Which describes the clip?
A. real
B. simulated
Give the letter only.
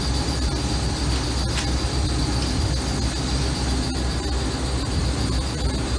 A